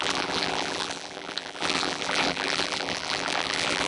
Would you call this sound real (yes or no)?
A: no